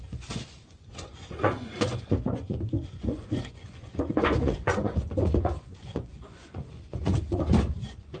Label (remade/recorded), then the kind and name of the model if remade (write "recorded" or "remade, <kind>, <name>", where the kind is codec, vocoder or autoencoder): remade, vocoder, Vocos